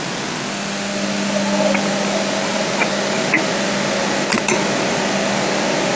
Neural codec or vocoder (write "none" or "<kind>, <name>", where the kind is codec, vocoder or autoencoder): none